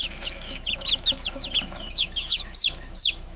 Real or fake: fake